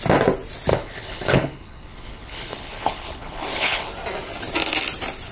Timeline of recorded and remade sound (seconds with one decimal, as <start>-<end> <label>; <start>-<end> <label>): 0.0-0.7 recorded; 0.7-3.9 remade; 3.9-5.3 recorded